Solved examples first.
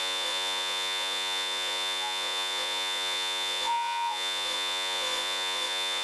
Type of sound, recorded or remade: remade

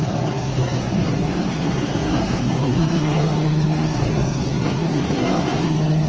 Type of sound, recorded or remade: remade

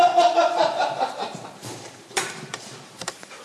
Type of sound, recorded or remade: remade